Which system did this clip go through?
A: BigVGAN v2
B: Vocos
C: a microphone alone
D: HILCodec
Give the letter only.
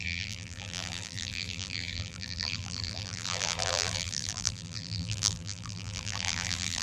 A